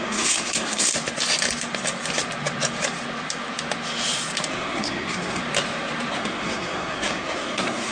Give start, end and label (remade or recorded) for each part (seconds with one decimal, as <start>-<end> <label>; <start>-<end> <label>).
0.0-0.9 remade; 0.9-4.5 recorded; 4.5-5.4 remade; 5.4-6.1 recorded; 6.1-7.9 remade